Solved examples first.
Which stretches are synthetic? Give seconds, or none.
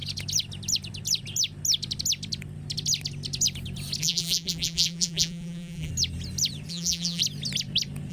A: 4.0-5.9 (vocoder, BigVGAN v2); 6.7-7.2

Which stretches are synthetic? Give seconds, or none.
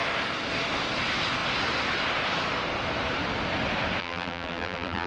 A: 4.0-5.1 (vocoder, BigVGAN v2)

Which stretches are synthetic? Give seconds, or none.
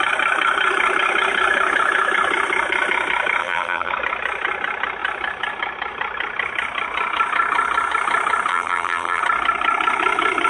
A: 3.4-3.9 (vocoder, BigVGAN v2); 8.5-9.2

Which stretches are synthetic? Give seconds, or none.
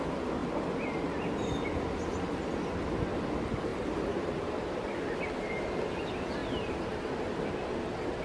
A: 6.4-7.1 (vocoder, BigVGAN v2)